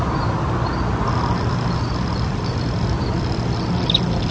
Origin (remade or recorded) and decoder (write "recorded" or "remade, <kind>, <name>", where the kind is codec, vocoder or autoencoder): recorded